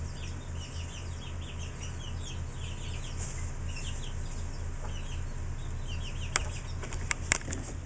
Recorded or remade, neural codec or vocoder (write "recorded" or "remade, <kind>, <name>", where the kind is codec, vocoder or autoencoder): recorded